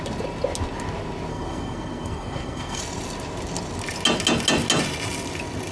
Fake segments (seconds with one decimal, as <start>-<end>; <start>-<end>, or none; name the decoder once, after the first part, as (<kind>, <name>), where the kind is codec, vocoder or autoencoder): 1.3-2.8 (codec, SNAC)